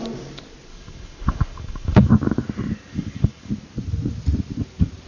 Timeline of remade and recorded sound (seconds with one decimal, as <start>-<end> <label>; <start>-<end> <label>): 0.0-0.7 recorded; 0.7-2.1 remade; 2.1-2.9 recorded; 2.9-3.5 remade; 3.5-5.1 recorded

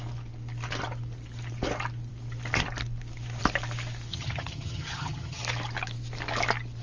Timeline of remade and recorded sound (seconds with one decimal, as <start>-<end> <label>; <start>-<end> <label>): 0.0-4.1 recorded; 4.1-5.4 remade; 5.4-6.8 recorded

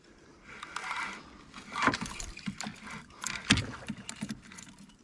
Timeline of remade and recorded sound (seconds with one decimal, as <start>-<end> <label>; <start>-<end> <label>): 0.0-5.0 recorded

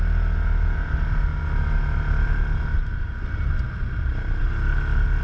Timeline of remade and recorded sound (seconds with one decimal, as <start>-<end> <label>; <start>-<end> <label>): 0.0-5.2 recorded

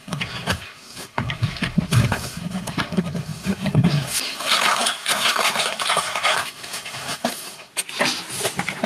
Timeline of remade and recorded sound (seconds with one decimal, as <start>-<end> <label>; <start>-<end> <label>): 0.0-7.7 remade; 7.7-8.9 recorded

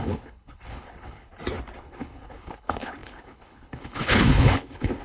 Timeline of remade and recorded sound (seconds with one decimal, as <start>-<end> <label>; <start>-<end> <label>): 0.0-1.3 remade; 1.3-1.8 recorded; 1.8-5.0 remade

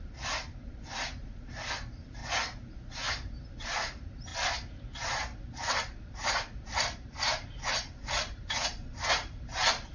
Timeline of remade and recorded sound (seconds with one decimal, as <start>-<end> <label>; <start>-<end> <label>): 0.0-2.2 remade; 2.2-3.1 recorded; 3.1-9.9 remade

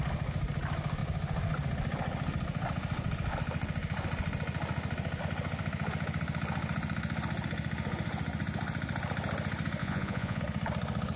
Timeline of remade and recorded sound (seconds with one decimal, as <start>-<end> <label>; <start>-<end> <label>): 0.0-9.8 recorded; 9.8-10.4 remade; 10.4-11.2 recorded